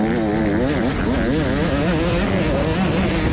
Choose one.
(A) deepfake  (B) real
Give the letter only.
B